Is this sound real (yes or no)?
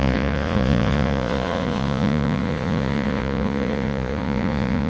no